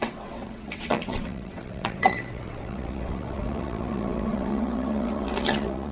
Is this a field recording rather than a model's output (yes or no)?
no